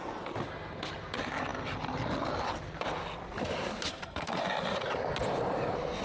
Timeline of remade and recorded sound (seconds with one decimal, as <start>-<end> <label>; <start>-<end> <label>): 0.0-3.9 recorded; 3.9-4.4 remade; 4.4-6.0 recorded